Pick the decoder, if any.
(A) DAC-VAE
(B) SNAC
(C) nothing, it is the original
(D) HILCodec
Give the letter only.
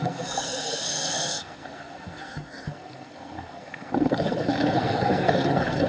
B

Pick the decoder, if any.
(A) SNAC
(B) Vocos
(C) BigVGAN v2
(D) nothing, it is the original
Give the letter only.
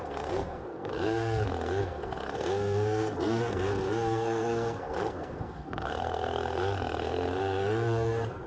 A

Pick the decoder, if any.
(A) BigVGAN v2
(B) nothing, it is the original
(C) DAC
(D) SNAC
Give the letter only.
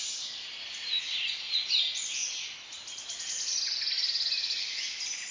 B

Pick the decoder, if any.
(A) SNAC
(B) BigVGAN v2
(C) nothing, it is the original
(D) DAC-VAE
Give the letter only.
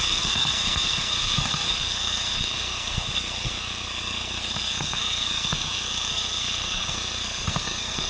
A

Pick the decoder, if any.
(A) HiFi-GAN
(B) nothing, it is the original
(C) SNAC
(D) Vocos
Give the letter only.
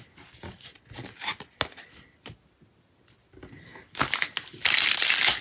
B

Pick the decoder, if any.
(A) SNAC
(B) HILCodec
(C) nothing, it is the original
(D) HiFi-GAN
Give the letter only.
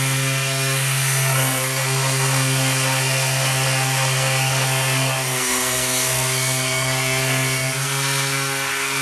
A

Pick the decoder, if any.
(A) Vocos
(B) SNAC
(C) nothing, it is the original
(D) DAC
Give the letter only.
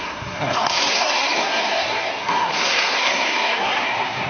B